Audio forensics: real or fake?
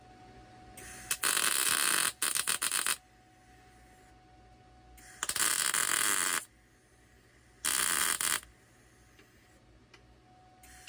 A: real